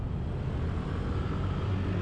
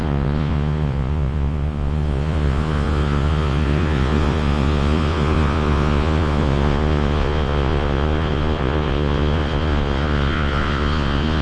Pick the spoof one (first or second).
second